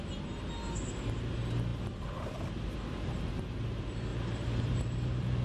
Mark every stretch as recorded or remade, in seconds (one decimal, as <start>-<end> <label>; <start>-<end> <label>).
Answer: 0.0-4.1 recorded; 4.1-5.4 remade